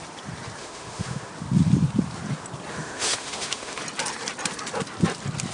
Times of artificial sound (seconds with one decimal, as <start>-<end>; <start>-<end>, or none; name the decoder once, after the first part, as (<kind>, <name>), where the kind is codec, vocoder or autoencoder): 0.6-1.3 (autoencoder, DAC-VAE); 2.7-3.8